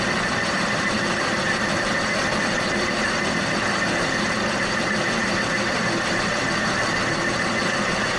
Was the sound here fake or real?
fake